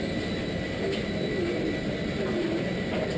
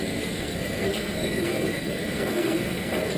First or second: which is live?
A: first